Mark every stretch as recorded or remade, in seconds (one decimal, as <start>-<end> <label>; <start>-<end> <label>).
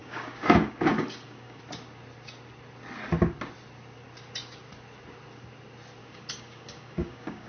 0.0-1.6 remade; 1.6-6.0 recorded; 6.0-7.5 remade